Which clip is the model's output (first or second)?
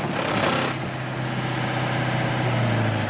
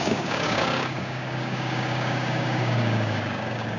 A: second